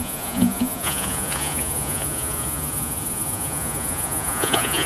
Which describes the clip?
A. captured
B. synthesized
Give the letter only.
B